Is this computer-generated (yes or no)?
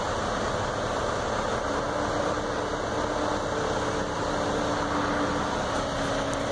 no